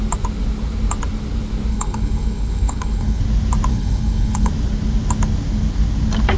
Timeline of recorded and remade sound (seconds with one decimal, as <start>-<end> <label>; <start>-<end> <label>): 0.0-1.7 recorded; 1.7-3.2 remade; 3.2-3.7 recorded; 3.7-4.5 remade; 4.5-6.4 recorded